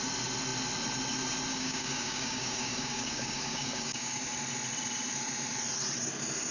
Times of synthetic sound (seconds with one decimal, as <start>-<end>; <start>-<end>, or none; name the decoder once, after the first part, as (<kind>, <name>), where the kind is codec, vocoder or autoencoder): 1.5-4.2 (codec, DAC)